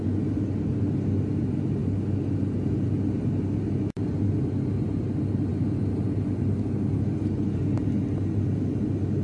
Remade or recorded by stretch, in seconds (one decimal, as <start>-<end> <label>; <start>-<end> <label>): 0.0-9.2 recorded

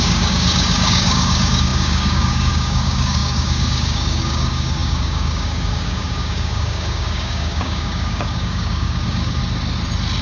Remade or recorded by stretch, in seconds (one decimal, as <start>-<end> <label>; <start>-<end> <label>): 0.0-9.4 remade; 9.4-10.2 recorded